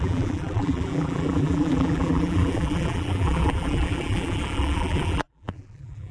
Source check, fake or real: fake